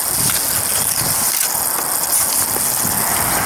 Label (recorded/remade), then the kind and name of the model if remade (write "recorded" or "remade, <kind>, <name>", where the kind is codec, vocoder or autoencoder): recorded